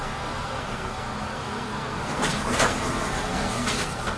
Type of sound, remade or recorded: remade